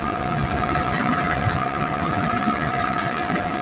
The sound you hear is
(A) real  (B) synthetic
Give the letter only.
B